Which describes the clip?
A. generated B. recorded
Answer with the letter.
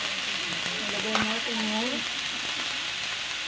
B